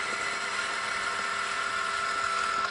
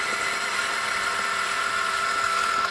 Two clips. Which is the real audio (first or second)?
first